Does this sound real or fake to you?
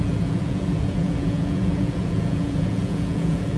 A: fake